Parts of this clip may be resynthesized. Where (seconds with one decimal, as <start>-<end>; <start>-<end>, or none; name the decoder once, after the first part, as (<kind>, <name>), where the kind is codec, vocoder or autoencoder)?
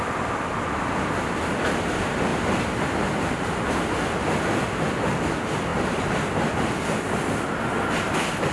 none